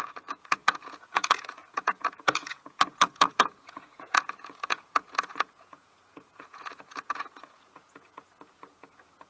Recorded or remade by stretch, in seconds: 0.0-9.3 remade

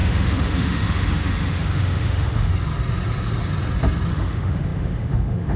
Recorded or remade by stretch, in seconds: 0.0-2.5 remade; 2.5-4.1 recorded; 4.1-5.6 remade

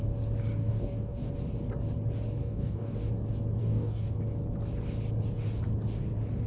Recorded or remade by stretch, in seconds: 0.0-0.6 recorded; 0.6-1.3 remade; 1.3-2.4 recorded; 2.4-3.1 remade; 3.1-3.6 recorded; 3.6-4.2 remade; 4.2-6.5 recorded

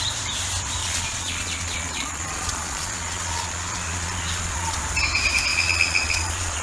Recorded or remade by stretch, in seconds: 0.0-0.8 recorded; 0.8-4.8 remade; 4.8-5.5 recorded; 5.5-6.6 remade

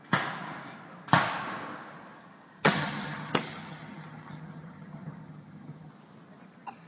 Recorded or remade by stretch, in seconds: 0.0-2.6 recorded; 2.6-5.9 remade; 5.9-6.9 recorded

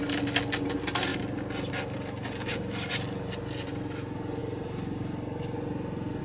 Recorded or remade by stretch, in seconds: 0.0-6.2 recorded